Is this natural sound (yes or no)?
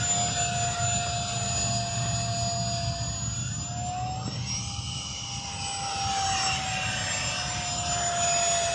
yes